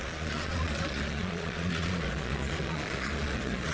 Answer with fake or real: fake